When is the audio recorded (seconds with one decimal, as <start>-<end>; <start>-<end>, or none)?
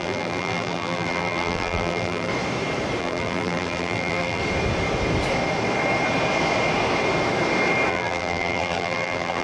2.3-3.0; 4.4-7.9